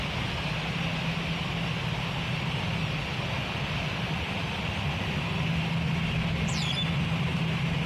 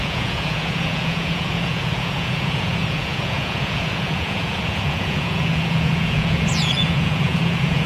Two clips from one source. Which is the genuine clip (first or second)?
first